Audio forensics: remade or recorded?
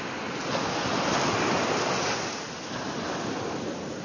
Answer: recorded